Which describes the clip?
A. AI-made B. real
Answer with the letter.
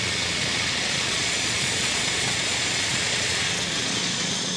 A